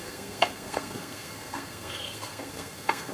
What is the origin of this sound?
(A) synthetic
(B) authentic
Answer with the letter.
A